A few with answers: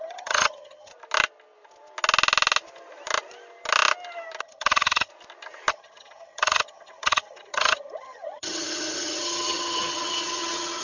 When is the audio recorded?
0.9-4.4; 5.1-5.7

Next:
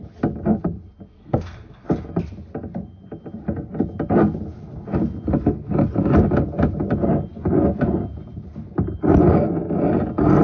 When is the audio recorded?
0.0-1.1; 1.9-10.4

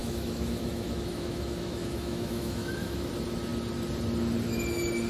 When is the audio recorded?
3.1-5.1

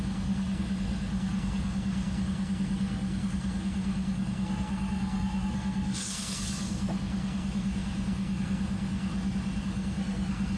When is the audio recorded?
9.1-9.6